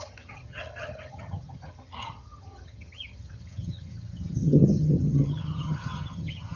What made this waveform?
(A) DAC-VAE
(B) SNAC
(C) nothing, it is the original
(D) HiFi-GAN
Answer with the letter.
D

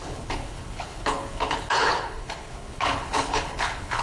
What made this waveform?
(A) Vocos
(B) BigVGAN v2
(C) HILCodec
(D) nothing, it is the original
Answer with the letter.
C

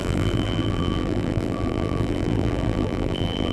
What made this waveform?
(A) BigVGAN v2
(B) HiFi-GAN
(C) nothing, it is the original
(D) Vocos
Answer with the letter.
A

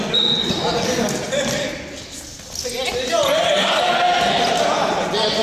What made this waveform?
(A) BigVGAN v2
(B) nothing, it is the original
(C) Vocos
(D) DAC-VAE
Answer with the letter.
B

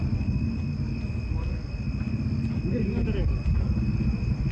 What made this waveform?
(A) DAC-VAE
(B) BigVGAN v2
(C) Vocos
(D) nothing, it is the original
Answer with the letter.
D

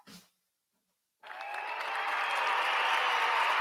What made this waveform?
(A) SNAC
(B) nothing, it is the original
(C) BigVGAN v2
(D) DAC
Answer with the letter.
B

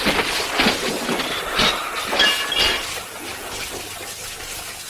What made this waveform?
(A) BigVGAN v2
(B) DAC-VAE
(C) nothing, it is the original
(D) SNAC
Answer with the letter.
C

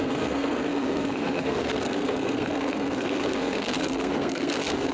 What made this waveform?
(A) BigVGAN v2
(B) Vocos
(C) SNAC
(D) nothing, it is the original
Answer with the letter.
C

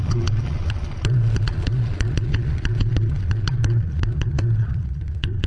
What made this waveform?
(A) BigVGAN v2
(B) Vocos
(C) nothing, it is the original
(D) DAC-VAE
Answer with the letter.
B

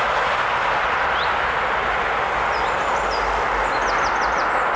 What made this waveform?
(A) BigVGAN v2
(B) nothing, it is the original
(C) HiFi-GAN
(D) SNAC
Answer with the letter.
B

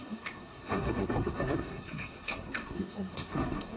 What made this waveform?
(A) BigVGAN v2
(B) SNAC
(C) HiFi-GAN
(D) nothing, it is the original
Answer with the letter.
B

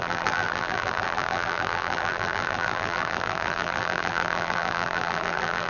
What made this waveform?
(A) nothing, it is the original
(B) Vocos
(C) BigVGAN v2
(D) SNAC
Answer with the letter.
C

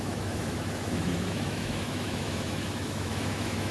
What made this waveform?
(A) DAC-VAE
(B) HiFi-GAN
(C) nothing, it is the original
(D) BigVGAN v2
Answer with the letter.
A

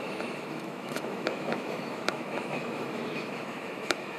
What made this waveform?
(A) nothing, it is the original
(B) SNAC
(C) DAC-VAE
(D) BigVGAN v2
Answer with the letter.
C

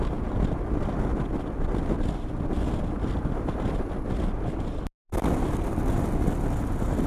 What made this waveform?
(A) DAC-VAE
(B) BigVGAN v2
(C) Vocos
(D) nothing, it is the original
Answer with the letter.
D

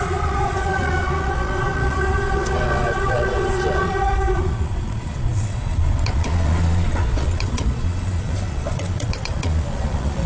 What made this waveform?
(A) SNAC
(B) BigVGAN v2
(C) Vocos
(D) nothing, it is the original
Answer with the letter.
C